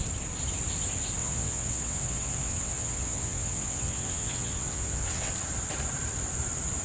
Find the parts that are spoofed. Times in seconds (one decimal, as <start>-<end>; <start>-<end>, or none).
1.2-5.3